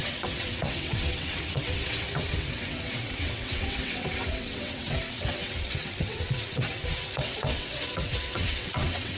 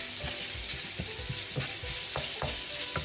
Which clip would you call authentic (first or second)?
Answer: second